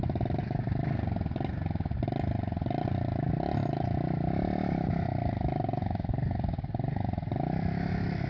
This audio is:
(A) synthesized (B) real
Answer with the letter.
B